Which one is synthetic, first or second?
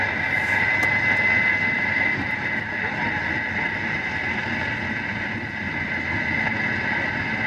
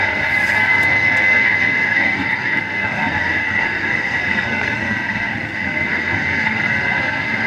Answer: second